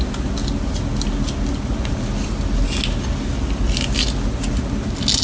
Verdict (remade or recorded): recorded